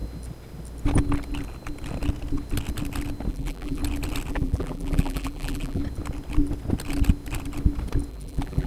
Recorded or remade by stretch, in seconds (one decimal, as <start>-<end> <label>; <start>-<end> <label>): 0.0-3.3 recorded; 3.3-3.8 remade; 3.8-4.3 recorded; 4.3-5.8 remade; 5.8-8.1 recorded; 8.1-8.7 remade